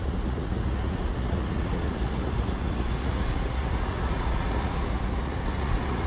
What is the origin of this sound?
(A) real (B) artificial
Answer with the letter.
B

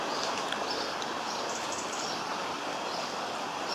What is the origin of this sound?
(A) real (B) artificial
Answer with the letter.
A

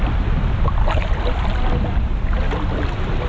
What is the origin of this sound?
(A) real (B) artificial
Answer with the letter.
A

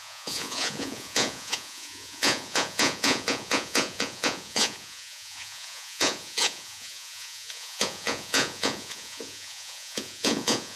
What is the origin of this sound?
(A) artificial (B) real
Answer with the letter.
A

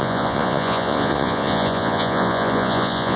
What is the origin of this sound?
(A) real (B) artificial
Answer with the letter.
B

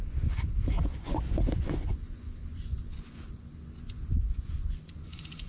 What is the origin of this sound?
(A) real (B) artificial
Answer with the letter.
B